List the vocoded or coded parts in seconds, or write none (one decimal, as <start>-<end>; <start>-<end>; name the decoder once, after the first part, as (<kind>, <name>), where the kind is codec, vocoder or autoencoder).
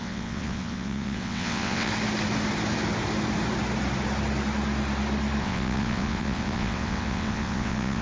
0.0-1.9 (vocoder, WaveNeXt); 5.4-8.0